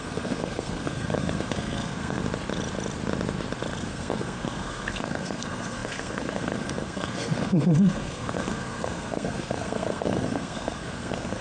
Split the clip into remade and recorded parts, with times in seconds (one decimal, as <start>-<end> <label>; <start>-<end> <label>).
0.0-2.2 remade; 2.2-3.8 recorded; 3.8-11.4 remade